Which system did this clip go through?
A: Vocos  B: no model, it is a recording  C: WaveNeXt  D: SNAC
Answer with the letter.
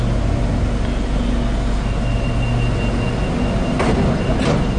B